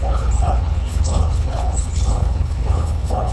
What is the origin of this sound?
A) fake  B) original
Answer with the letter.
A